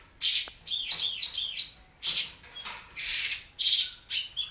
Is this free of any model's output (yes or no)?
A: yes